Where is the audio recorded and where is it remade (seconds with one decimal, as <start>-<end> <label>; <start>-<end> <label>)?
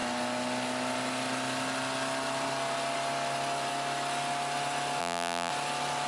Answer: 0.0-5.0 recorded; 5.0-5.5 remade; 5.5-6.1 recorded